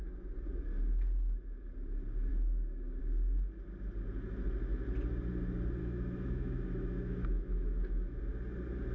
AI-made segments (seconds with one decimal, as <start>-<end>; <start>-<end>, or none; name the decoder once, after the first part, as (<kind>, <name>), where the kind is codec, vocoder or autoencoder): 5.8-8.2 (autoencoder, DAC-VAE)